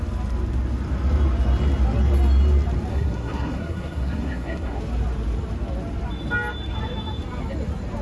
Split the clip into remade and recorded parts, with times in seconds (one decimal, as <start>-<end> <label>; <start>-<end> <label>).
0.0-2.9 recorded; 2.9-4.8 remade; 4.8-8.0 recorded